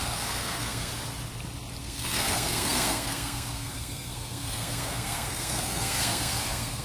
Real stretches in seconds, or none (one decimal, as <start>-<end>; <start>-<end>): 0.9-1.8